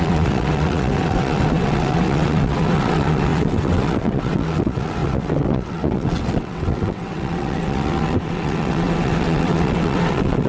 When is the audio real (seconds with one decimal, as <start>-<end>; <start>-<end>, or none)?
none

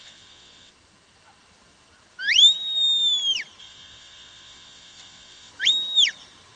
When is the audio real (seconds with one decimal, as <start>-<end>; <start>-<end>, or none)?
0.7-3.6; 5.5-6.6

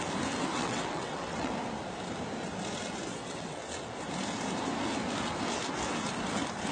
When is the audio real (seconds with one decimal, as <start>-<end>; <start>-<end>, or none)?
0.0-0.5; 1.5-3.1; 3.6-6.7